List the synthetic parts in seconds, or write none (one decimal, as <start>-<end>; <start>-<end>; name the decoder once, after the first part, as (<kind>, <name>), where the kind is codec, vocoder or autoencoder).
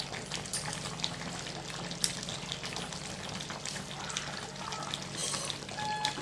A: none